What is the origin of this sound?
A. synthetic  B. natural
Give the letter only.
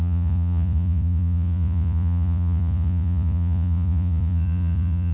A